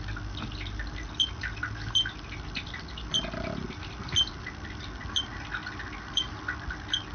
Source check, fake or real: real